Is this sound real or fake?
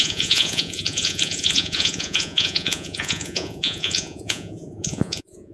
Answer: fake